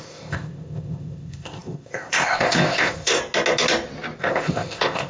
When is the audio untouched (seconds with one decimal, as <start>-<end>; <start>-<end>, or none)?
3.2-4.2